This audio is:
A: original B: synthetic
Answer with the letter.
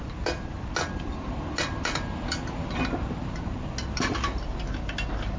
A